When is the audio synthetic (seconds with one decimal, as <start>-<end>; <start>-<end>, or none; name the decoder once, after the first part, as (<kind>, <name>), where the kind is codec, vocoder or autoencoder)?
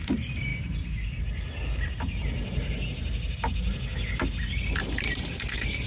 none